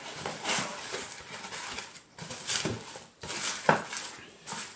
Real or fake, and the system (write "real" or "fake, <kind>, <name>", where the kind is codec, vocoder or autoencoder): real